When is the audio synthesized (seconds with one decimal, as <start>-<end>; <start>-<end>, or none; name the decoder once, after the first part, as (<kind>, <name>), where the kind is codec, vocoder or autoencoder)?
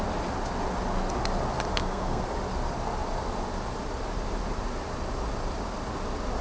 1.7-2.2 (codec, SNAC)